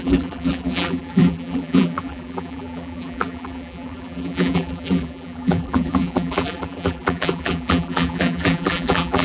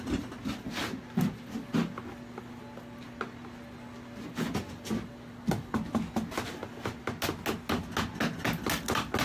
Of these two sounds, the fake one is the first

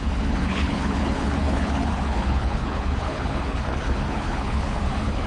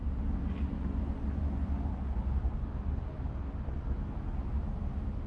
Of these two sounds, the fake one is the first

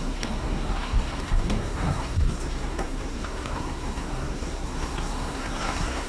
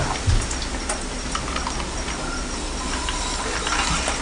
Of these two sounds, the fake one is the first